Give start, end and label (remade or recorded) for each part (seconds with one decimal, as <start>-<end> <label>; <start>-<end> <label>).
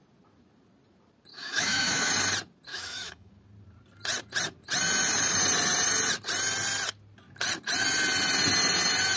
0.0-1.3 recorded; 1.3-2.1 remade; 2.1-2.7 recorded; 2.7-3.3 remade; 3.3-9.2 recorded